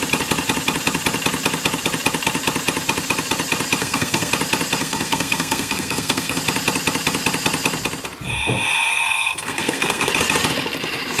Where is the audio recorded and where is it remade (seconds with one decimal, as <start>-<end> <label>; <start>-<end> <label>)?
0.0-3.8 recorded; 3.8-4.3 remade; 4.3-4.8 recorded; 4.8-6.4 remade; 6.4-8.9 recorded; 8.9-10.1 remade; 10.1-11.2 recorded